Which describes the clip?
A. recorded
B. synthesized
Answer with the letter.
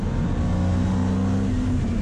A